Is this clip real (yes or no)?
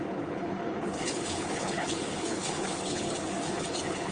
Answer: no